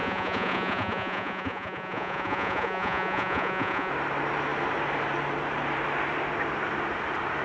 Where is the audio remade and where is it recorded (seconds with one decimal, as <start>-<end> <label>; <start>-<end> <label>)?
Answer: 0.0-3.9 remade; 3.9-7.4 recorded

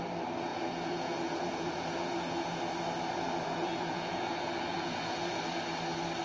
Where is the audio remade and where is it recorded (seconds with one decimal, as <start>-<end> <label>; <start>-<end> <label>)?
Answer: 0.0-0.5 recorded; 0.5-2.6 remade; 2.6-3.1 recorded; 3.1-5.4 remade; 5.4-6.2 recorded

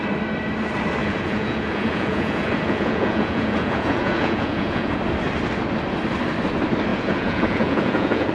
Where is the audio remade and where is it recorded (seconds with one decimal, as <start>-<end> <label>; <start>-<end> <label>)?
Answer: 0.0-1.0 recorded; 1.0-5.0 remade; 5.0-6.9 recorded; 6.9-8.3 remade

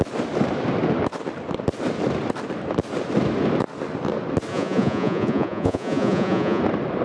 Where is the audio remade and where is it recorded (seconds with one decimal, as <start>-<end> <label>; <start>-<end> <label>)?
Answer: 0.0-4.5 recorded; 4.5-6.6 remade; 6.6-7.0 recorded

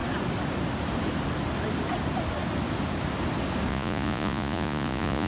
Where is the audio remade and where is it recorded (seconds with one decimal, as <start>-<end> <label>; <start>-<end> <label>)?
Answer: 0.0-3.7 recorded; 3.7-5.3 remade

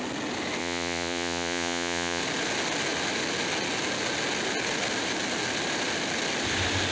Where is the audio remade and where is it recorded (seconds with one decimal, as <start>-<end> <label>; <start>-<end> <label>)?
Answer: 0.0-0.6 recorded; 0.6-2.2 remade; 2.2-6.9 recorded